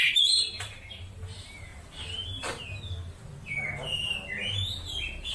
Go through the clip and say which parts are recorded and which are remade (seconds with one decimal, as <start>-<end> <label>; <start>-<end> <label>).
0.0-1.7 remade; 1.7-5.3 recorded